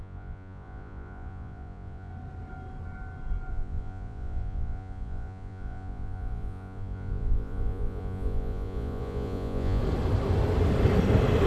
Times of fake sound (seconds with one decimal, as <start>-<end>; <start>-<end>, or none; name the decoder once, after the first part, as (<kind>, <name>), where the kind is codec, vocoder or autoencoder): 0.0-2.1 (vocoder, Vocos); 3.5-9.8